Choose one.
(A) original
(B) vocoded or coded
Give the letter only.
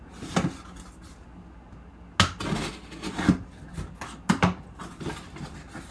A